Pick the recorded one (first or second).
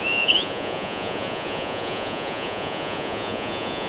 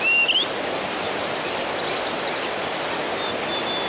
second